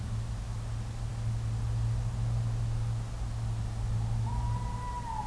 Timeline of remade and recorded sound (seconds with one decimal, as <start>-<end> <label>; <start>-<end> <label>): 0.0-5.3 recorded